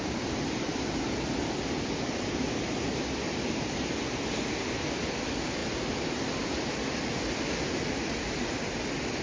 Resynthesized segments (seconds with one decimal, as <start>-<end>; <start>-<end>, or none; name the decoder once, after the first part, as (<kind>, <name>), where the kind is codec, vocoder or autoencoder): none